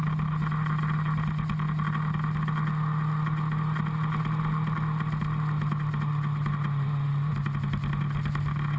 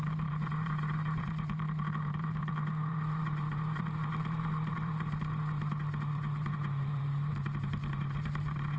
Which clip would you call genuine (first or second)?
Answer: first